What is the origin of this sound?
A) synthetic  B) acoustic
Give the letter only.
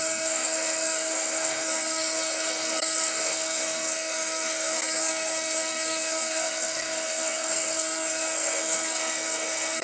A